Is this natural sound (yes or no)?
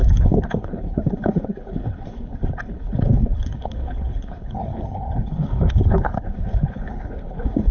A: no